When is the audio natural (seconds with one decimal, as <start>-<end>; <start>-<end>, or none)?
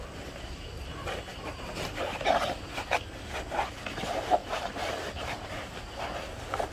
0.0-1.3; 2.3-4.4; 5.8-6.7